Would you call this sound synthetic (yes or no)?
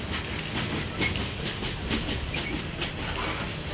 no